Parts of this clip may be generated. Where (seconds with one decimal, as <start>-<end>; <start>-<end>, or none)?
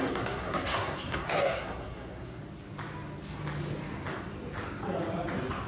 0.0-2.4